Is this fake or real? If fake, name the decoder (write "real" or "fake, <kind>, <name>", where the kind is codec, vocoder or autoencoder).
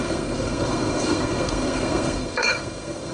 fake, codec, SNAC